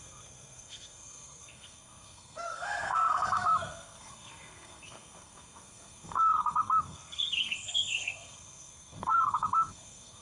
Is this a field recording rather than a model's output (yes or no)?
no